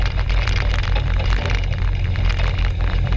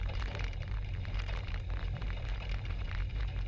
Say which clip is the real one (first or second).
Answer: first